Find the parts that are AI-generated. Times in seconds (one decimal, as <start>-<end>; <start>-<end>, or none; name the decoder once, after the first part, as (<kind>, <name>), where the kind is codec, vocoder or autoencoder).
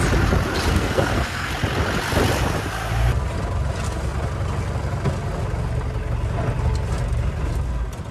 0.7-1.5 (codec, SNAC)